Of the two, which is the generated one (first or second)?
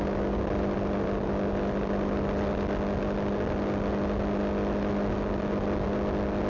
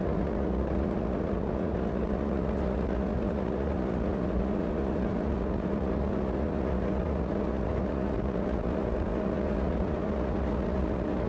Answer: second